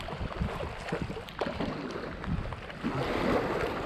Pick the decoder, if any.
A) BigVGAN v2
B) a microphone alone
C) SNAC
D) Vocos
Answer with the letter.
B